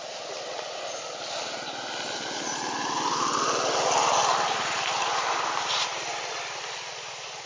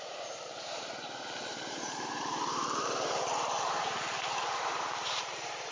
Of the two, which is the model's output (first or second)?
second